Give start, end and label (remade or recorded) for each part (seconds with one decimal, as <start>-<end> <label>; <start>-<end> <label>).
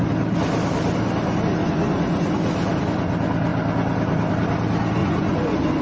0.0-1.6 recorded; 1.6-2.3 remade; 2.3-5.0 recorded; 5.0-5.8 remade